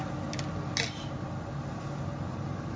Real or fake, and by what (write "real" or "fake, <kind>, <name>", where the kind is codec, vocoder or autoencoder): real